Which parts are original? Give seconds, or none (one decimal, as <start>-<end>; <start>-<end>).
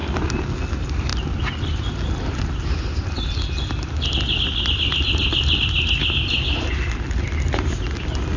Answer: 0.0-8.4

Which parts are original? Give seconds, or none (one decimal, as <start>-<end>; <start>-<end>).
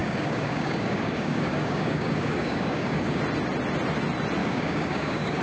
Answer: 3.2-4.4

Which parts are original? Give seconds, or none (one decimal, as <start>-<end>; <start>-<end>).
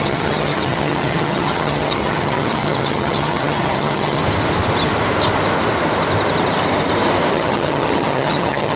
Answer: 4.2-7.3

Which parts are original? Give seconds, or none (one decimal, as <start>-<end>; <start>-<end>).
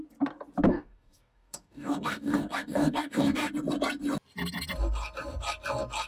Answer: 0.0-0.7; 3.5-6.1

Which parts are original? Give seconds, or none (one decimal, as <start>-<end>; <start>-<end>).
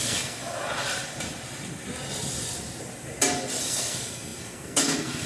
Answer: 0.4-3.6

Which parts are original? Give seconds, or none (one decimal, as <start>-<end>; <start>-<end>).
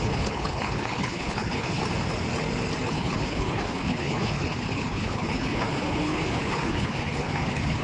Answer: 1.8-2.9